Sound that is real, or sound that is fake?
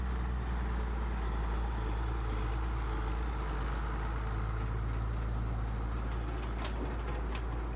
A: real